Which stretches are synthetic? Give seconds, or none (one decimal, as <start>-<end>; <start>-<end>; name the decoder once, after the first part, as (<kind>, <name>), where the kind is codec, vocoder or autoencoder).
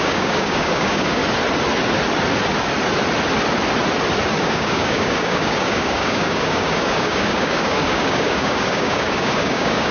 0.0-1.2 (codec, DAC); 4.4-9.9